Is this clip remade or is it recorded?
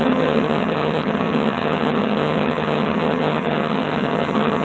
remade